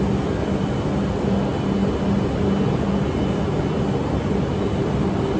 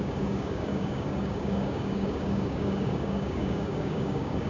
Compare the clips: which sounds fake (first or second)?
second